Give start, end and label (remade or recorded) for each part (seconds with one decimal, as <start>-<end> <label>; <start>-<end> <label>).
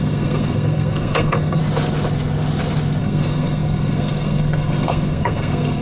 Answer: 0.0-1.6 remade; 1.6-3.0 recorded; 3.0-5.8 remade